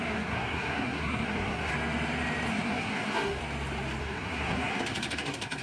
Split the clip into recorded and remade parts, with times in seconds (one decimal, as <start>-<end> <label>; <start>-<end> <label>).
0.0-1.7 remade; 1.7-2.5 recorded; 2.5-3.4 remade; 3.4-4.0 recorded; 4.0-5.6 remade